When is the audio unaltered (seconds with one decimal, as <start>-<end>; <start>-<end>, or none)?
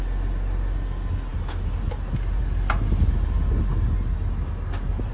0.0-5.1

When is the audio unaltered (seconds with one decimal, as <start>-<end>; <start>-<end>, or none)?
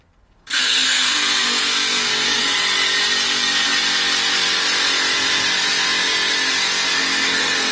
2.4-7.0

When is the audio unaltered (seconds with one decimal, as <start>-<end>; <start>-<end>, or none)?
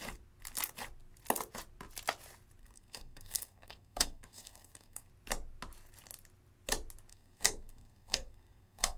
0.0-2.6; 5.1-7.1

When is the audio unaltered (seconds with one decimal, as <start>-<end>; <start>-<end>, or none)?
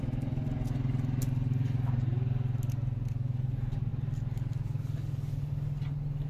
0.0-6.3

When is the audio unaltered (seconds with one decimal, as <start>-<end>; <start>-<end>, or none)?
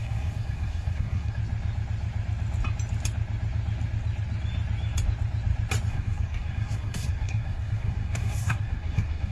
1.4-5.9